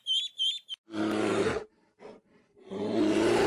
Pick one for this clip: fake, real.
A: real